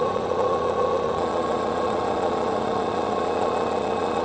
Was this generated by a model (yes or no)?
yes